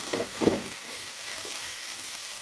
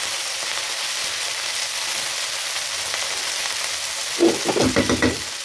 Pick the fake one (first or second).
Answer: first